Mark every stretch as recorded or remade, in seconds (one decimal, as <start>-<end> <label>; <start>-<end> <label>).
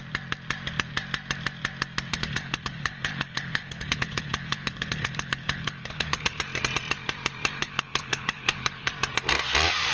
0.0-2.1 recorded; 2.1-6.4 remade; 6.4-7.6 recorded; 7.6-8.9 remade; 8.9-9.9 recorded